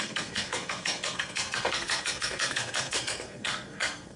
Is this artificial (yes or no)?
yes